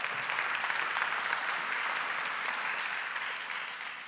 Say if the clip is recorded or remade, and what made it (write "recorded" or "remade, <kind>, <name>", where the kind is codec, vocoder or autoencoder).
recorded